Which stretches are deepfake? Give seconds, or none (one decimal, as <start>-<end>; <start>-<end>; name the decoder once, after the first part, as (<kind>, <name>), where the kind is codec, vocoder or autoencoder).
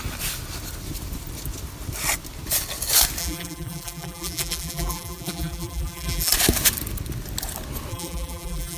3.2-6.3 (vocoder, BigVGAN v2); 7.9-8.8